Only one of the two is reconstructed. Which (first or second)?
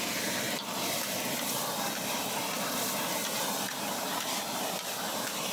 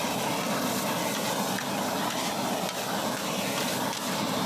first